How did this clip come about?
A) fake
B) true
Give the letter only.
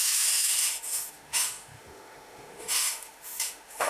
A